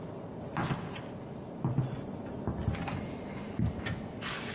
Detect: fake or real real